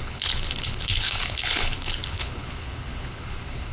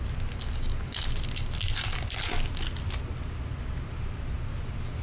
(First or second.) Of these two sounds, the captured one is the second